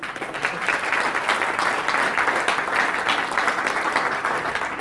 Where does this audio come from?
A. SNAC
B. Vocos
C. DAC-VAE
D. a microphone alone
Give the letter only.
D